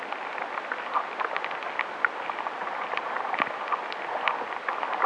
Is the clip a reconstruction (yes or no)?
no